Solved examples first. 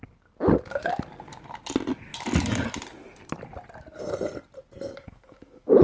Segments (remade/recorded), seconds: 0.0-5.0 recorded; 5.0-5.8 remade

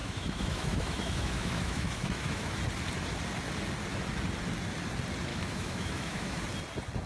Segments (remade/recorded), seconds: 0.0-2.6 remade; 2.6-5.3 recorded; 5.3-6.4 remade; 6.4-7.1 recorded

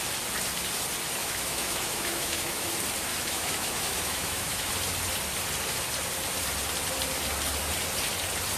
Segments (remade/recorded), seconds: 0.0-1.2 recorded; 1.2-2.7 remade; 2.7-3.1 recorded; 3.1-4.7 remade; 4.7-8.6 recorded

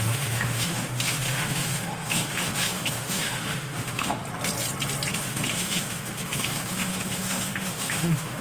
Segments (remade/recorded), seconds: 0.0-4.2 remade; 4.2-5.1 recorded; 5.1-8.4 remade